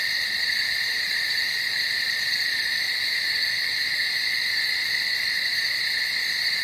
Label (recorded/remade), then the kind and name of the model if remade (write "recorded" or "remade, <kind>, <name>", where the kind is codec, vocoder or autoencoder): recorded